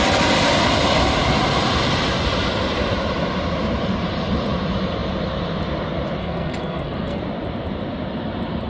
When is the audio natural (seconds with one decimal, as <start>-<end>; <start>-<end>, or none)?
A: 0.0-6.2; 7.2-8.7